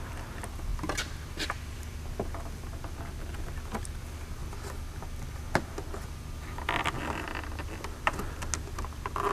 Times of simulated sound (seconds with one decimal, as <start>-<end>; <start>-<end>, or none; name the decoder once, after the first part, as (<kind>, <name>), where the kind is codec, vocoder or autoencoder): none